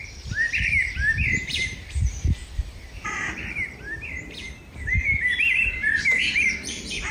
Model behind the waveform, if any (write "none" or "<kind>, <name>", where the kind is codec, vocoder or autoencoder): vocoder, BigVGAN v2